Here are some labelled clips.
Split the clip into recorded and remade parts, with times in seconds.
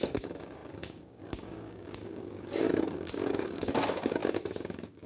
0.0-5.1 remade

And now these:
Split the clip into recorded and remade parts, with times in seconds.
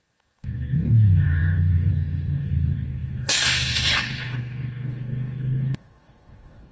0.0-6.7 remade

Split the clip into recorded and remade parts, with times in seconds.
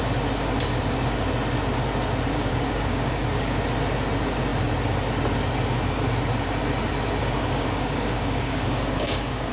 0.0-2.5 recorded; 2.5-3.6 remade; 3.6-7.2 recorded; 7.2-9.5 remade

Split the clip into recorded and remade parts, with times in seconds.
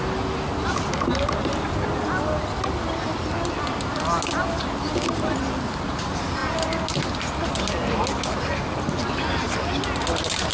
0.0-10.5 recorded